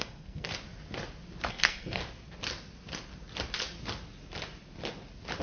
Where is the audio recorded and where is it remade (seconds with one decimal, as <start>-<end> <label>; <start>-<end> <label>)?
0.0-0.5 remade; 0.5-1.5 recorded; 1.5-2.0 remade; 2.0-5.4 recorded